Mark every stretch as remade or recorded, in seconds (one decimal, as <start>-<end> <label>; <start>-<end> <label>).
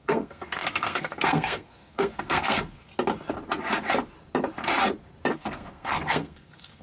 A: 0.0-2.9 remade; 2.9-5.3 recorded; 5.3-6.8 remade